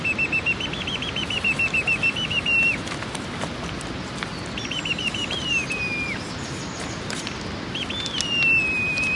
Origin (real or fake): real